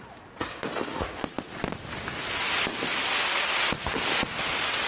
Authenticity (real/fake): real